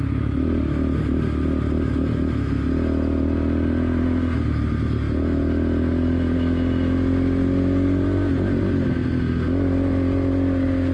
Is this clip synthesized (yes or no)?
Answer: no